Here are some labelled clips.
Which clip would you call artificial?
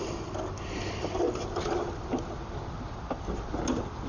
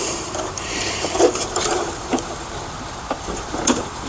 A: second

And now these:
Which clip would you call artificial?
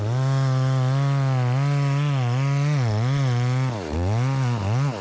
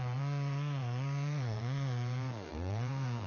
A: second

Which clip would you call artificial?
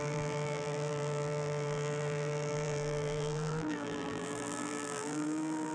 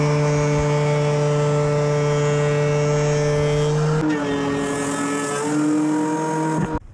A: first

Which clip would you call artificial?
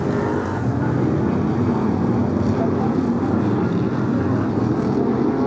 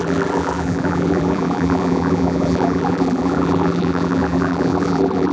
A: second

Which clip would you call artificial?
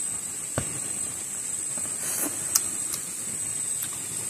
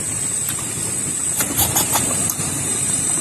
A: second